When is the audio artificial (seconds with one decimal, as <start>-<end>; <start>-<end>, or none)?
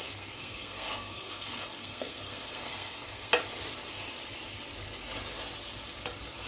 0.0-3.3